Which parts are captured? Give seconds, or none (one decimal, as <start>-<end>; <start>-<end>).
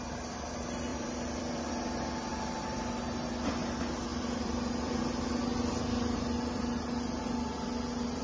0.0-0.9; 1.7-2.3; 2.8-4.1; 5.0-8.2